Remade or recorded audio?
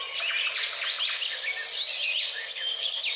recorded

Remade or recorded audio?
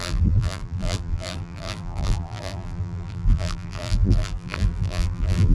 remade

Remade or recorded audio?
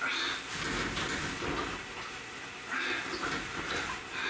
recorded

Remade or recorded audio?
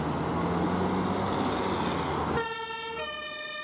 recorded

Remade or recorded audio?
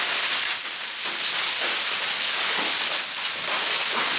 recorded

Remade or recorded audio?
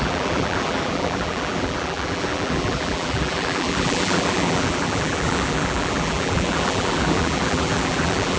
remade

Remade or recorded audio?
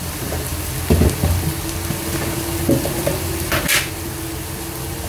recorded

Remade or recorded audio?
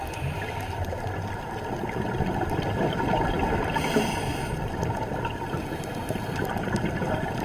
recorded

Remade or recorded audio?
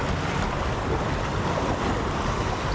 remade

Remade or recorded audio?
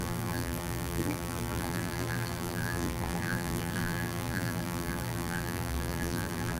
remade